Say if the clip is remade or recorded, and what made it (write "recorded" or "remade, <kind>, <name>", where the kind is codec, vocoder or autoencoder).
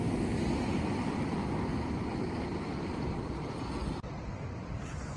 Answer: recorded